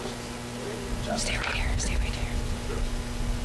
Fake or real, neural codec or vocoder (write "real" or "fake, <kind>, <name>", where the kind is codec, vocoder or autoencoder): real